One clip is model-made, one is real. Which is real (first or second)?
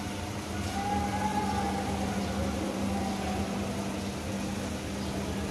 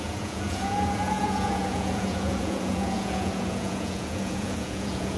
first